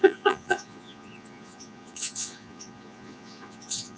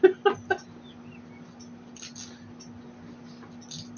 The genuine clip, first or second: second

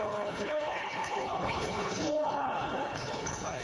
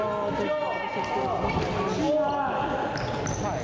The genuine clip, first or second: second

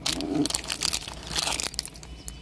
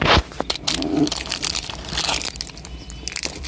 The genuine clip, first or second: first